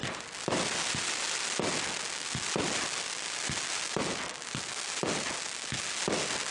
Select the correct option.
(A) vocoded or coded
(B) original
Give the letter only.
B